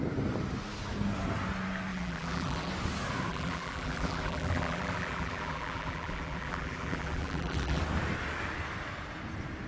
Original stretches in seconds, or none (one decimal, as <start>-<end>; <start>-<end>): 0.0-1.9; 2.7-3.3; 7.8-9.7